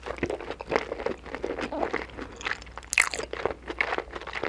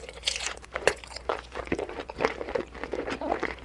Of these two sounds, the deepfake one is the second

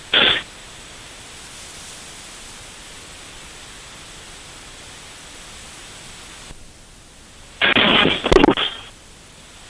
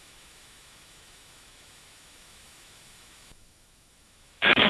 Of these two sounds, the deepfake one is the second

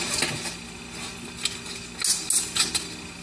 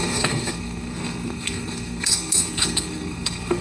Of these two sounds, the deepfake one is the second